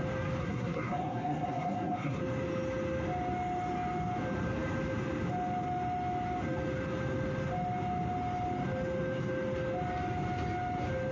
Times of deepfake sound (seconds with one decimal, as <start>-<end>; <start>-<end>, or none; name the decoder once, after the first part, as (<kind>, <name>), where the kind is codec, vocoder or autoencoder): 0.4-2.2 (codec, SNAC)